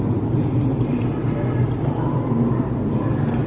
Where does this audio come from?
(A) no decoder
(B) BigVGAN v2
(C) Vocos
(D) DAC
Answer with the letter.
A